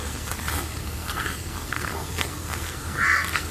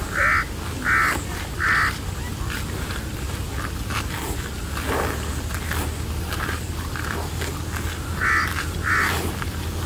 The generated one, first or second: first